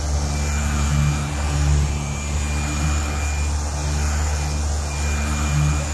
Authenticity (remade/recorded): recorded